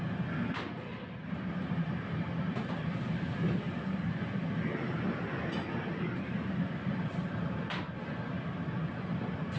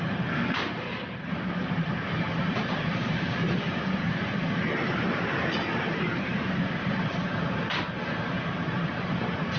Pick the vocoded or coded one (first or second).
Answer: second